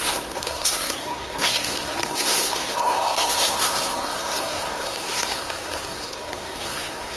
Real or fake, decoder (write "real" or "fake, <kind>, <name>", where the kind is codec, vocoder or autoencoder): fake, codec, SNAC